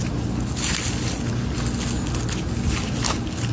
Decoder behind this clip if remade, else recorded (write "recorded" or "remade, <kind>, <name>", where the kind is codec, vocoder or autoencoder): recorded